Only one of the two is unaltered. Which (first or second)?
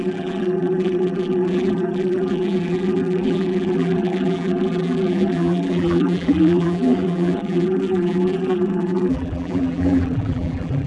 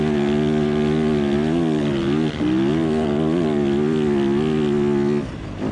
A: second